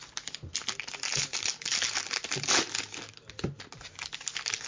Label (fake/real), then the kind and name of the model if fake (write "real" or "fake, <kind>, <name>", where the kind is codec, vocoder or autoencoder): real